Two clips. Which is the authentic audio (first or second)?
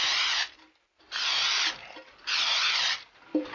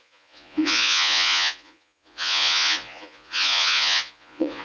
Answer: first